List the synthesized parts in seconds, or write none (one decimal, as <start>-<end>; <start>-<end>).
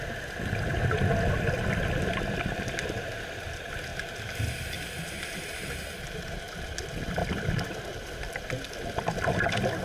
7.2-9.8